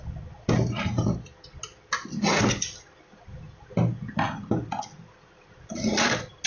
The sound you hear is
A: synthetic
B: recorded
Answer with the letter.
B